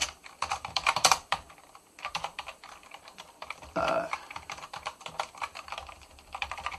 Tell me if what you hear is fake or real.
fake